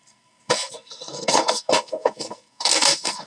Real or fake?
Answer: fake